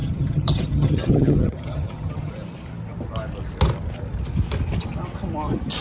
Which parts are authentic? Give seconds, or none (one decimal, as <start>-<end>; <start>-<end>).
2.3-5.8